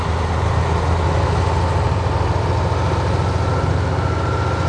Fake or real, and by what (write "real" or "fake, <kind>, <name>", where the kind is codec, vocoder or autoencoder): real